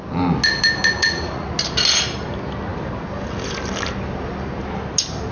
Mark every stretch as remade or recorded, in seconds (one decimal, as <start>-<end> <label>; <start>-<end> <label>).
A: 0.0-1.0 recorded; 1.0-1.5 remade; 1.5-5.3 recorded